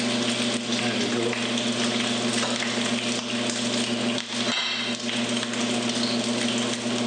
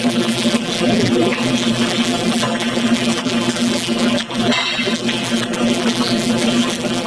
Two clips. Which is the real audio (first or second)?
first